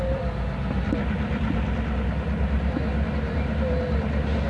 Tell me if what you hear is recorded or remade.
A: recorded